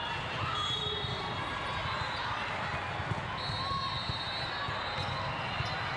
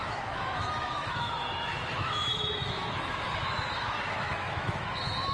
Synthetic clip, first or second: second